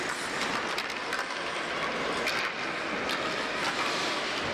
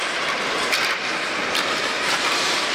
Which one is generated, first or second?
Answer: second